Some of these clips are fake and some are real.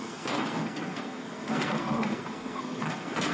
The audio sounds fake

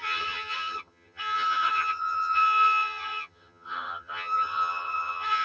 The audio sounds fake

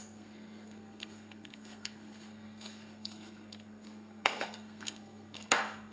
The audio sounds fake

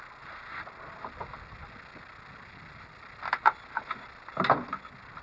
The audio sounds real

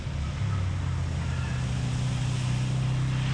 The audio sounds real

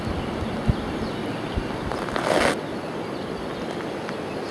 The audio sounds real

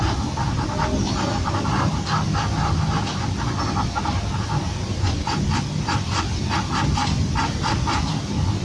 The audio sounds real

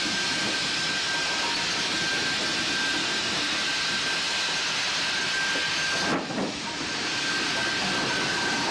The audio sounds real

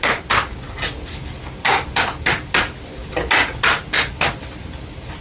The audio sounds real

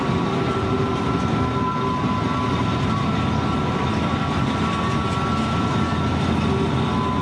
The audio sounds real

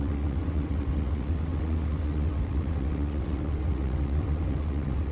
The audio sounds fake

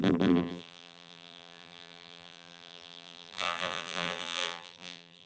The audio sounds fake